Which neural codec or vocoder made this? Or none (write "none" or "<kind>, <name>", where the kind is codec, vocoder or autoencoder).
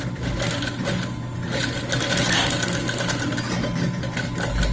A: none